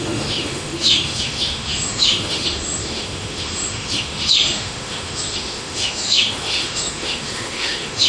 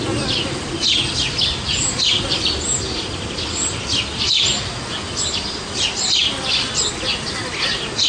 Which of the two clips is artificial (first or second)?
first